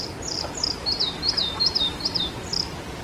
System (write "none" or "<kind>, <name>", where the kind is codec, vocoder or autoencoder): none